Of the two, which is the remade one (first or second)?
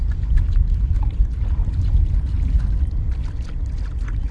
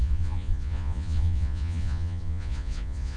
second